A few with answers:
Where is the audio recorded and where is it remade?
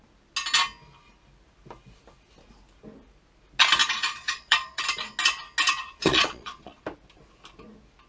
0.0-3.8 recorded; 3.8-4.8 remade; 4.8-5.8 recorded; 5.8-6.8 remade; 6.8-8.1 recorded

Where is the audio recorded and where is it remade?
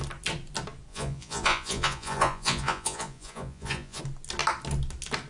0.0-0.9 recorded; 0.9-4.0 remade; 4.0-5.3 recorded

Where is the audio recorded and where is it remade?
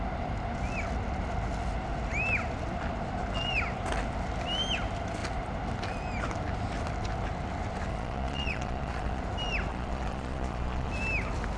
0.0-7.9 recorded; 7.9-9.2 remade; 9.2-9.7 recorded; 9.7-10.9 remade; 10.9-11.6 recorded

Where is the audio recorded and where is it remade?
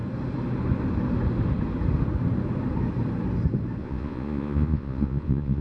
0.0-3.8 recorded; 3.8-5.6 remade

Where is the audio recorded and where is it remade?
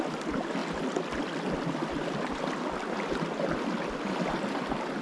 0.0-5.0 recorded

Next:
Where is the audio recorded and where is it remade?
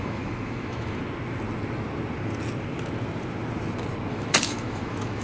0.0-1.0 remade; 1.0-4.1 recorded; 4.1-5.2 remade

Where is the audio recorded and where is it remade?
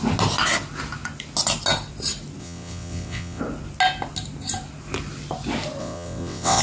0.0-2.4 recorded; 2.4-3.4 remade; 3.4-5.8 recorded; 5.8-6.6 remade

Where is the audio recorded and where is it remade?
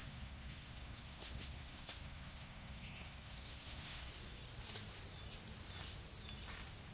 0.0-4.1 remade; 4.1-6.9 recorded